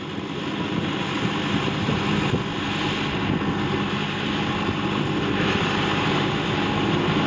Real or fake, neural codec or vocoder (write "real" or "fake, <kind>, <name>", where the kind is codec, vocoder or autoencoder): real